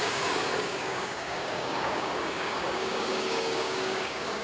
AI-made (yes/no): yes